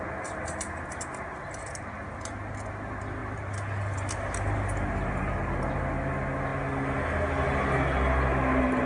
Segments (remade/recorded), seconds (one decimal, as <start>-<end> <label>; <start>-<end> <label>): 0.0-3.2 recorded; 3.2-5.7 remade; 5.7-8.3 recorded; 8.3-8.9 remade

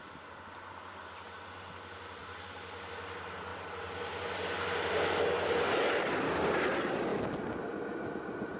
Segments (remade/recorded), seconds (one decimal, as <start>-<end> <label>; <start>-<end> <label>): 0.0-8.6 recorded

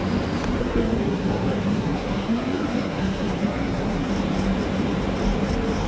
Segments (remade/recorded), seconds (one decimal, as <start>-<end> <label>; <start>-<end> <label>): 0.0-0.6 recorded; 0.6-4.1 remade; 4.1-5.9 recorded

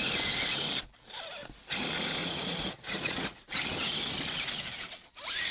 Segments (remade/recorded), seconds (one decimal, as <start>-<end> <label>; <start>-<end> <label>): 0.0-2.2 recorded; 2.2-3.5 remade; 3.5-5.5 recorded

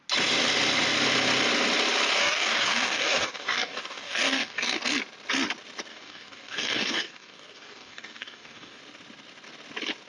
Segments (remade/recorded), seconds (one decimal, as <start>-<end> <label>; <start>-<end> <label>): 0.0-2.2 recorded; 2.2-4.8 remade; 4.8-5.9 recorded; 5.9-8.8 remade; 8.8-10.1 recorded

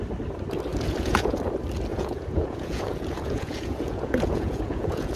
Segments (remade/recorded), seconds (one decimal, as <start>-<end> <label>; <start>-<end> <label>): 0.0-0.7 recorded; 0.7-1.4 remade; 1.4-1.9 recorded; 1.9-5.2 remade

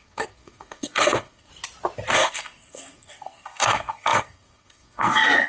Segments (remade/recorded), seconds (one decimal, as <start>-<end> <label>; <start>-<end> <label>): 0.0-1.5 remade; 1.5-2.1 recorded; 2.1-5.5 remade

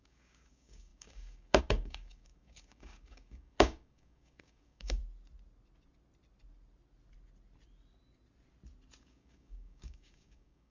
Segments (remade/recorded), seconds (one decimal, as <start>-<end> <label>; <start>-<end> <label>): 0.0-5.0 remade; 5.0-9.0 recorded; 9.0-10.7 remade